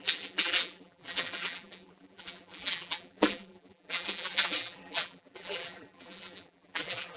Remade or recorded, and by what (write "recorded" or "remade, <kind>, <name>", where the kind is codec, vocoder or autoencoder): remade, vocoder, BigVGAN v2